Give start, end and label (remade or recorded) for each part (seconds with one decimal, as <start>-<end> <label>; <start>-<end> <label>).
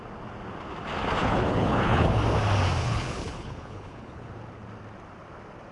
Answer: 0.0-1.2 recorded; 1.2-2.2 remade; 2.2-2.8 recorded; 2.8-4.3 remade; 4.3-5.7 recorded